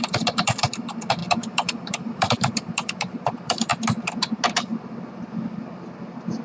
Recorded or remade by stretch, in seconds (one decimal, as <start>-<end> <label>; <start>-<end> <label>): 0.0-3.7 remade; 3.7-6.4 recorded